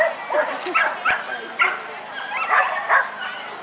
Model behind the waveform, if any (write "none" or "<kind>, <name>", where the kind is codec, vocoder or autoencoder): none